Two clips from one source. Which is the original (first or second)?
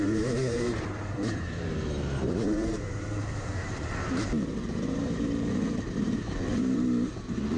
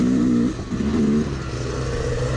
second